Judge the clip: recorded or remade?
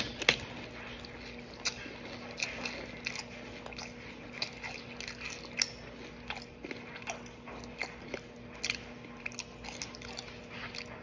recorded